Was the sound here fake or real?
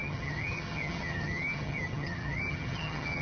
fake